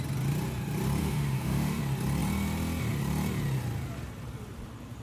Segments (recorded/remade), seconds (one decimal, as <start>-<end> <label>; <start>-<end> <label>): 0.0-1.0 recorded; 1.0-1.8 remade; 1.8-5.0 recorded